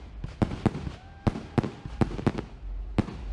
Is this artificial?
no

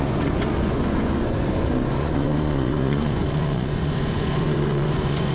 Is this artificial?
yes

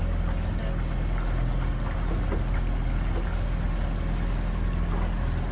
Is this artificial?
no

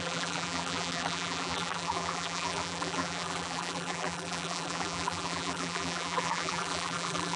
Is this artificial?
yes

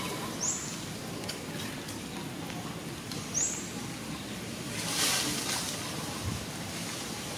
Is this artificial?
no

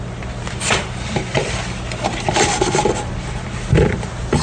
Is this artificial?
no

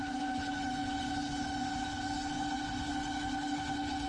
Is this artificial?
yes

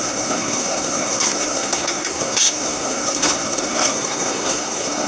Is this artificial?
yes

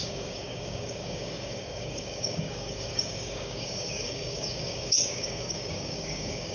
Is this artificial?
yes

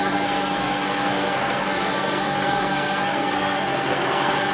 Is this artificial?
yes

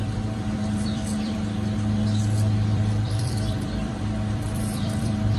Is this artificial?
yes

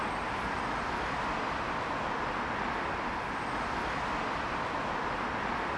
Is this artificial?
no